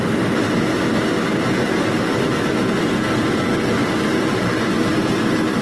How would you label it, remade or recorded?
recorded